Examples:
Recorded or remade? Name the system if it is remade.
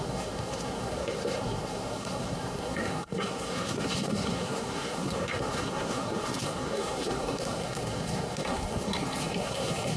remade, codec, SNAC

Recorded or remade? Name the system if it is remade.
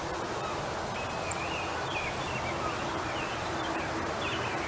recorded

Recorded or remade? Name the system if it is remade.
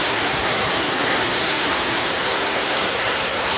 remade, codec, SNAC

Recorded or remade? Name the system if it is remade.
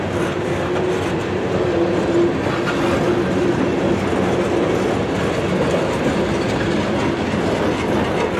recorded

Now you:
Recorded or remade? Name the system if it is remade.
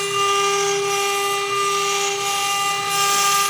recorded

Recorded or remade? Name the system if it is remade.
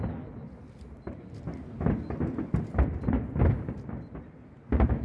recorded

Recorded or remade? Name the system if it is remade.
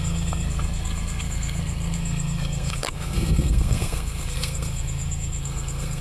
remade, codec, SNAC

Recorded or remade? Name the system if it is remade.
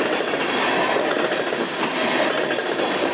recorded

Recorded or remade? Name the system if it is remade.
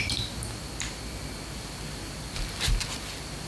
recorded